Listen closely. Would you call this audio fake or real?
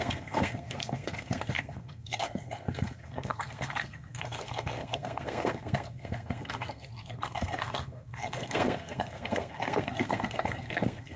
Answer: fake